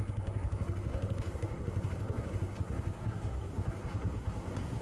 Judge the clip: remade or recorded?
remade